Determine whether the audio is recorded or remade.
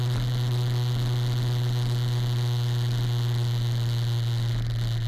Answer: recorded